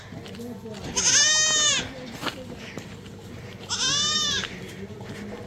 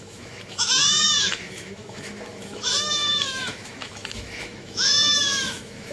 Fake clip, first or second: second